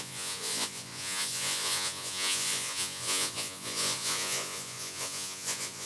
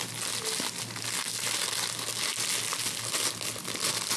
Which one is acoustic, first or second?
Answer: second